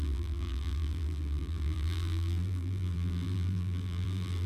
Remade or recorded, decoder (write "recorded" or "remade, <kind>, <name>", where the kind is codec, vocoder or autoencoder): remade, vocoder, BigVGAN v2